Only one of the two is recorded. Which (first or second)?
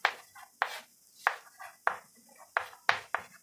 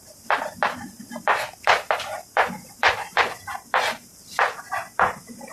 first